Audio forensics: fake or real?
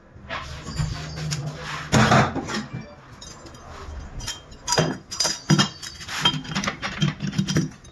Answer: real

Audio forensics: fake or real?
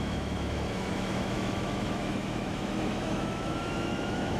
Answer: fake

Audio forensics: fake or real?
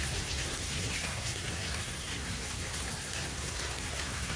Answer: fake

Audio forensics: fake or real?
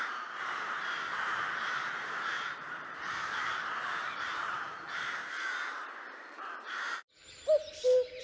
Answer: fake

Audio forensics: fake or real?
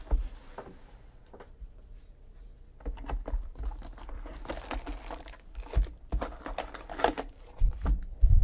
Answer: real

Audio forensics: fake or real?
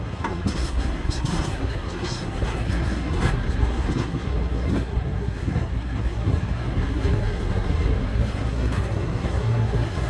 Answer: fake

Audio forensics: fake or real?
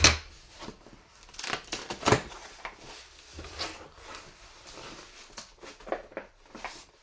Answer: real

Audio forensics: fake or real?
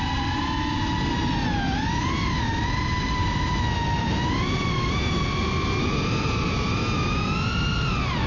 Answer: real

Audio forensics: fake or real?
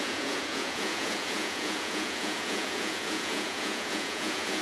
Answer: fake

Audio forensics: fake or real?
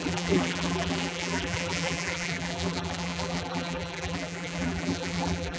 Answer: fake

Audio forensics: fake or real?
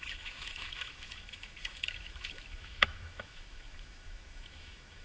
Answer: fake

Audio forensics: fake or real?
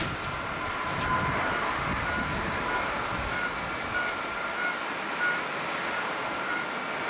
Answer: real